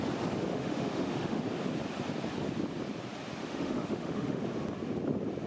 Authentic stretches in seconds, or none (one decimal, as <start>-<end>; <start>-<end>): 0.0-0.5; 1.4-3.4; 4.4-5.5